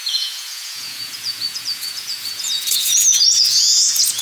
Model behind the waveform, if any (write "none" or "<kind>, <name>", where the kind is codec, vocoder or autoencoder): vocoder, Vocos